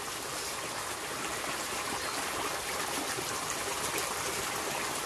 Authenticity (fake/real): real